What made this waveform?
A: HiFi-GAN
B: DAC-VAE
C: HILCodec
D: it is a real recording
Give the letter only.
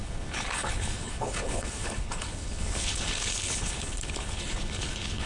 C